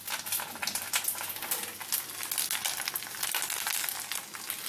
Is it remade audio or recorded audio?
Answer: recorded